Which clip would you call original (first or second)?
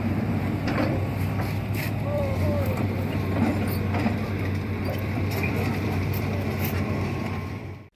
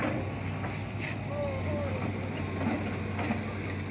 second